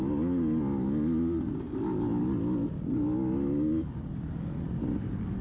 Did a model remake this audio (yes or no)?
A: no